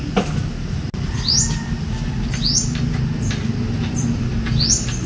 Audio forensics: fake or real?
real